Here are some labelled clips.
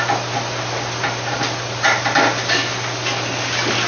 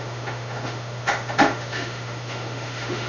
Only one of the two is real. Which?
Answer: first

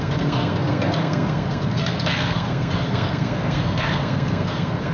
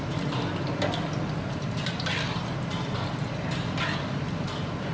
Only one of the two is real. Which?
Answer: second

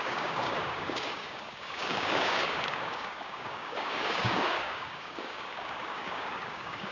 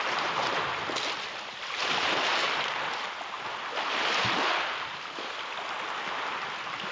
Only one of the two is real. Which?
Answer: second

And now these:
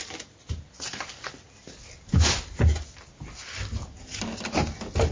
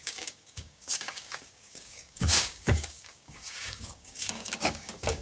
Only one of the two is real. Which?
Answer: first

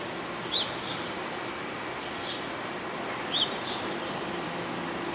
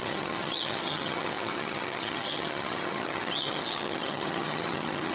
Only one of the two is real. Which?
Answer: first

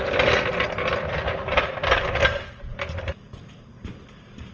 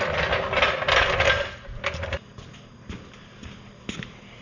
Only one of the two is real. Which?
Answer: second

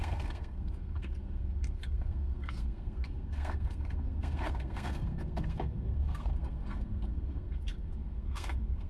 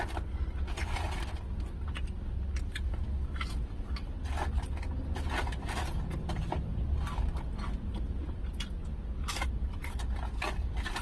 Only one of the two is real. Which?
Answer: second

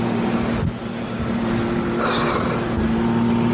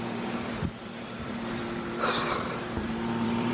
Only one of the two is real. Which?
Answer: first